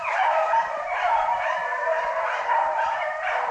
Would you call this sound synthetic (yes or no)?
yes